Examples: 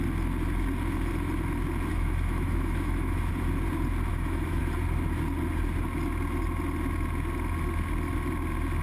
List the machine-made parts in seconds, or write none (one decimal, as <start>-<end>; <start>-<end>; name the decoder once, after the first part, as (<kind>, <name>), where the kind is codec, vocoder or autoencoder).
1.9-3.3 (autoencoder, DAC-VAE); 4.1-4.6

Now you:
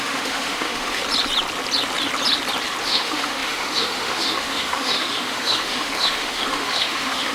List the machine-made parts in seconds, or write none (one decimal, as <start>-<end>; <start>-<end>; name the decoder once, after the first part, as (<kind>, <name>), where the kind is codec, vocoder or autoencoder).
0.0-1.0 (autoencoder, DAC-VAE); 2.8-7.3

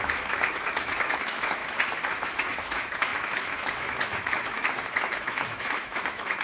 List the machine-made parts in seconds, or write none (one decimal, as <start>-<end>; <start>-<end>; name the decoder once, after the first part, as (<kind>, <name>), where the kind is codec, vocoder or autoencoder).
0.0-1.6 (autoencoder, DAC-VAE); 2.1-6.4

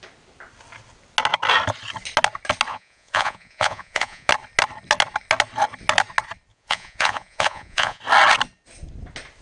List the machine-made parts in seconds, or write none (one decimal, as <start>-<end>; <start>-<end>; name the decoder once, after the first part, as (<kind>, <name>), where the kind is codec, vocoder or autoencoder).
2.7-4.3 (vocoder, Vocos); 6.5-8.0